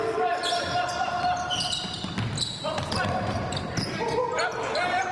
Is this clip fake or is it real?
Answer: real